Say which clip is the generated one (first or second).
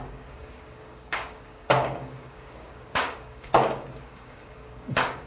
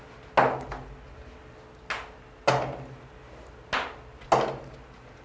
first